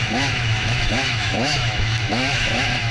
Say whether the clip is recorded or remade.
remade